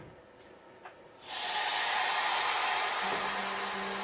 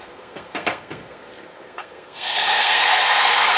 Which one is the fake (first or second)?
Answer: second